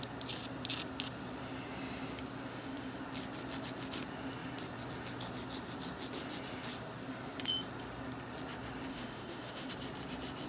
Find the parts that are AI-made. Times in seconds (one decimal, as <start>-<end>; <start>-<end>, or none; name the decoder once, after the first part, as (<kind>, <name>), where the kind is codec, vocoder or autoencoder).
2.5-3.0 (autoencoder, DAC-VAE); 8.9-9.7